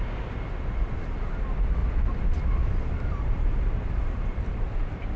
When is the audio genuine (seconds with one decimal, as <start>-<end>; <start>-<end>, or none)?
0.0-1.8